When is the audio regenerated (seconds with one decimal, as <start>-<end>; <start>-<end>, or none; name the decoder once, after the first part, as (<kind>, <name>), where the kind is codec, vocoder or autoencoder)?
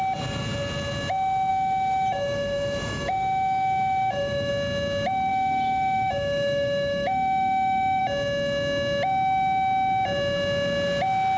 1.5-4.5 (autoencoder, DAC-VAE); 5.3-8.0